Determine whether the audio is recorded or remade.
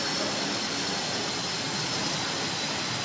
recorded